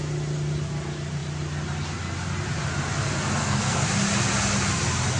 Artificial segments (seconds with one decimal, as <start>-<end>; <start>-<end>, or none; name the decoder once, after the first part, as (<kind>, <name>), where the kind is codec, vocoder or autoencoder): 3.4-3.9 (codec, SNAC)